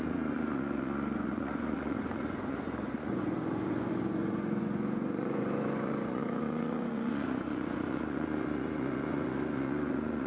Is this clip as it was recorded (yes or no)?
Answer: no